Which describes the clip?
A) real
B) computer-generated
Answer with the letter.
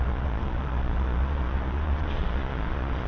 B